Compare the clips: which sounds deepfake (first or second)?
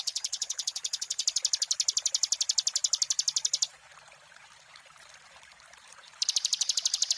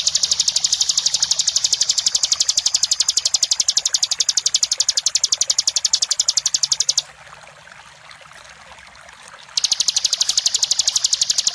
first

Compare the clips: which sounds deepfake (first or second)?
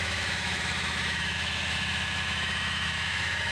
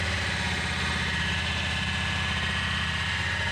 first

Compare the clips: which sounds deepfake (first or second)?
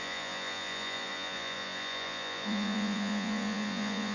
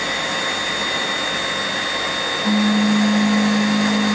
first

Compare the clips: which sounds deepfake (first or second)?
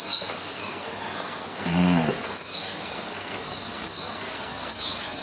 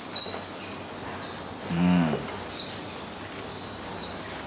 first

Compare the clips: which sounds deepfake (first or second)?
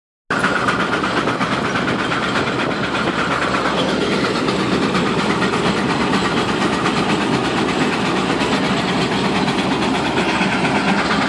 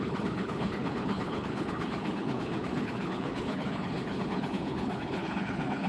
second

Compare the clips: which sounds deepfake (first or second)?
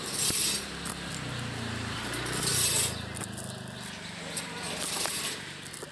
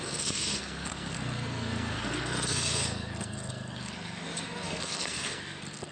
second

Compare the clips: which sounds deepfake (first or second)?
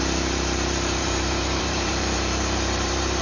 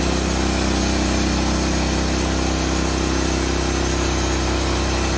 first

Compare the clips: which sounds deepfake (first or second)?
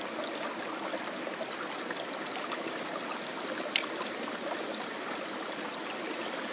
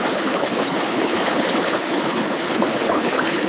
second